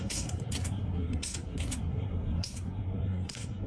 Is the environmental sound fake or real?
fake